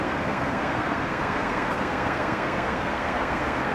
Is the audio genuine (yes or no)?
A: no